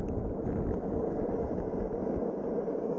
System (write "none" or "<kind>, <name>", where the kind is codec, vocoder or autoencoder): none